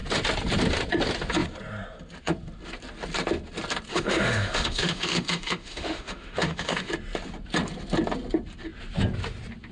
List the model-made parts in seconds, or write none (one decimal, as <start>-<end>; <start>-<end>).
3.9-6.9